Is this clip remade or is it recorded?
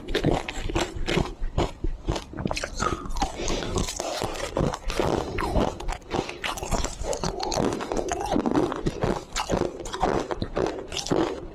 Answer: recorded